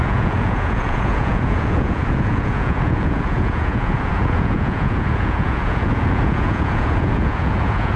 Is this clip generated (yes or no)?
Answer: yes